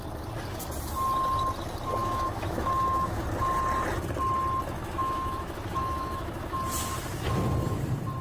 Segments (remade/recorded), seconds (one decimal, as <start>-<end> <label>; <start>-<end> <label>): 0.0-2.0 recorded; 2.0-3.2 remade; 3.2-4.8 recorded; 4.8-6.6 remade; 6.6-8.2 recorded